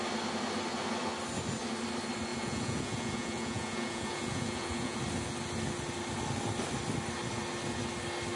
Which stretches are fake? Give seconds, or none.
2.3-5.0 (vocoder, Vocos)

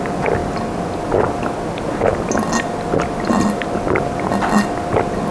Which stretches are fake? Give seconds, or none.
none